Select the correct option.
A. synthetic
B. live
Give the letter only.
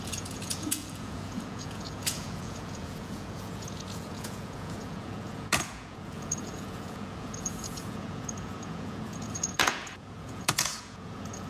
A